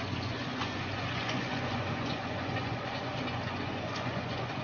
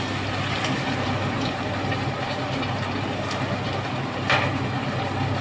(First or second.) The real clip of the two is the second